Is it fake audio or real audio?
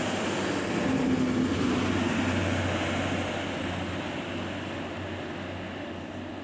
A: real